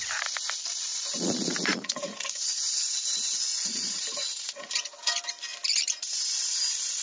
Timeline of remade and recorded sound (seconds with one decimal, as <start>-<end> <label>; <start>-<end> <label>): 0.0-0.9 recorded; 0.9-4.7 remade; 4.7-7.0 recorded

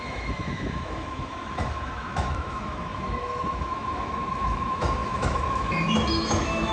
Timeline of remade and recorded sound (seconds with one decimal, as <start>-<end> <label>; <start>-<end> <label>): 0.0-6.7 remade